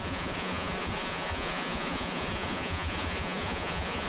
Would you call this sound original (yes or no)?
no